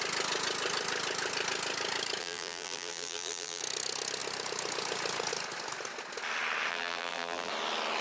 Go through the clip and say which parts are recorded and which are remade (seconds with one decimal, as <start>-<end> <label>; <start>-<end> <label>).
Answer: 0.0-2.2 recorded; 2.2-3.6 remade; 3.6-6.7 recorded; 6.7-7.5 remade; 7.5-8.0 recorded